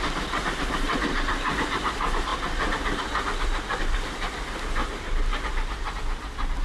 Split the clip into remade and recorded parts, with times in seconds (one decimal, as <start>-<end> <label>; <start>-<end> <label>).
0.0-2.3 remade; 2.3-3.8 recorded; 3.8-6.6 remade